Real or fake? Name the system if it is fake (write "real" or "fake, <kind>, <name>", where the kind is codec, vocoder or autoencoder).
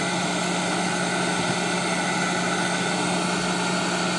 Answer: real